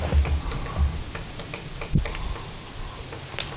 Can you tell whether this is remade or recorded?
recorded